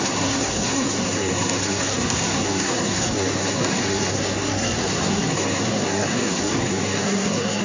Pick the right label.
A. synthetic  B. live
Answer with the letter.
A